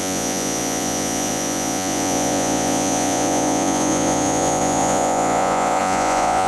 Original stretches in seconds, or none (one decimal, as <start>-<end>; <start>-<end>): none